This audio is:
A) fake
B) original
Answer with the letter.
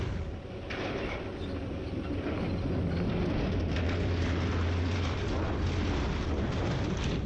B